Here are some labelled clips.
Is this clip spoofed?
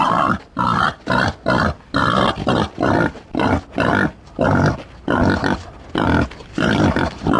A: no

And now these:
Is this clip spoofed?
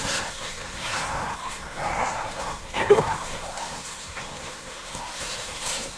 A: yes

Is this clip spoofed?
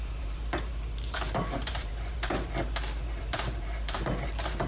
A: yes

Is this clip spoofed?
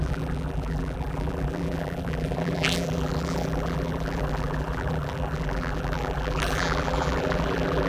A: yes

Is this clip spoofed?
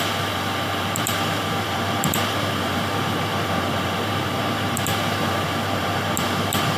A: yes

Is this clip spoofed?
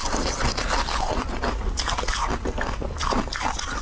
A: no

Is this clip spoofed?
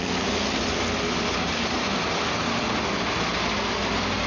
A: no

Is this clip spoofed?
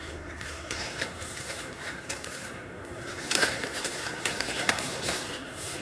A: yes